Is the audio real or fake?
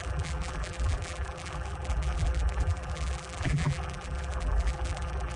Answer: fake